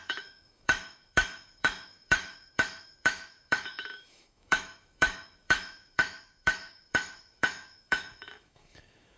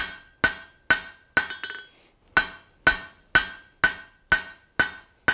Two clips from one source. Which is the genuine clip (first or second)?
second